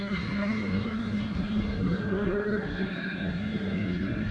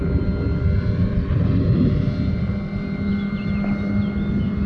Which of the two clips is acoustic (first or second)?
second